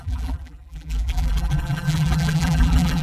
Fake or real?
fake